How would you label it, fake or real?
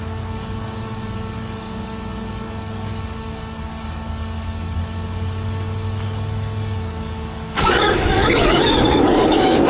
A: fake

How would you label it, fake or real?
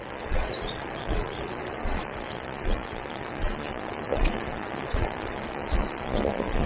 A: fake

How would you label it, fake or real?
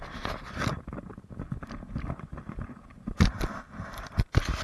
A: real